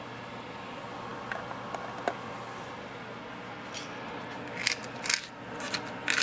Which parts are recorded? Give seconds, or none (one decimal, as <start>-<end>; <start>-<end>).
0.0-6.2